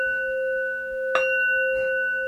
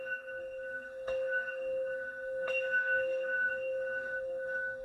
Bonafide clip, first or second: first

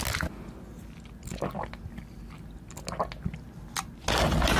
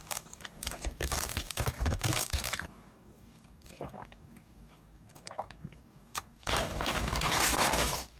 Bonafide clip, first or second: first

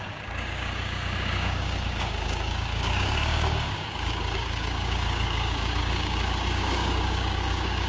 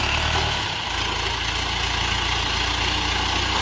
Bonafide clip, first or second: second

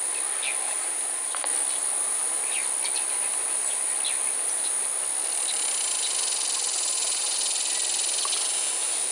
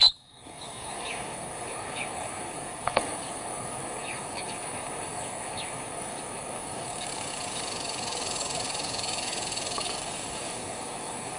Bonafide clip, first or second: first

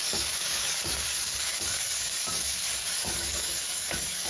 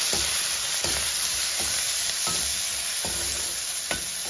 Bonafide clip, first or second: second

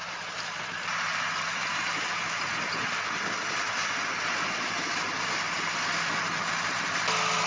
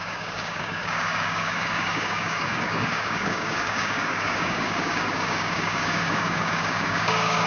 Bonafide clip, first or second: first